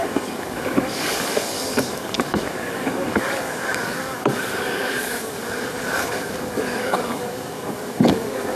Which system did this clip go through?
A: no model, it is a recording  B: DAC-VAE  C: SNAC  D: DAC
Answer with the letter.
D